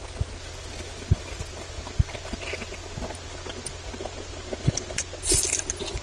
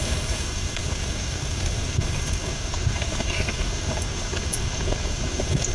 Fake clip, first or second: second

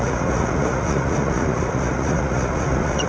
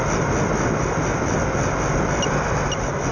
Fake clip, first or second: first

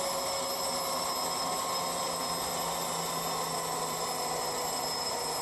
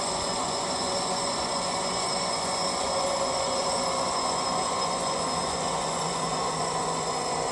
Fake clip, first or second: second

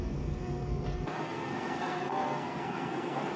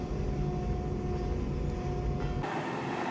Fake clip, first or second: first